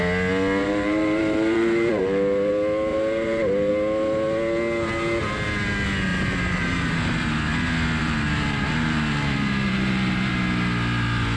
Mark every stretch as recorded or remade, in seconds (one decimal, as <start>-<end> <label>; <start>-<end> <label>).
0.0-0.6 recorded; 0.6-2.5 remade; 2.5-2.9 recorded; 2.9-3.7 remade; 3.7-6.1 recorded; 6.1-7.3 remade; 7.3-8.0 recorded; 8.0-10.3 remade; 10.3-11.4 recorded